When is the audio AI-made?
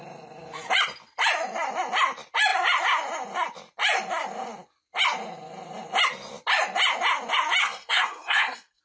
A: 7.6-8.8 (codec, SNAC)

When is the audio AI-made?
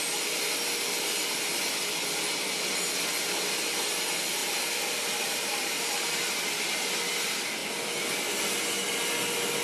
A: 4.4-6.2 (vocoder, BigVGAN v2)